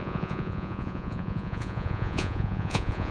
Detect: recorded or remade remade